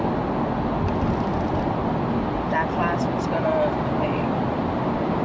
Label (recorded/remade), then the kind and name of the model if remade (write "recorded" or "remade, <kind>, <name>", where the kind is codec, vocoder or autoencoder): recorded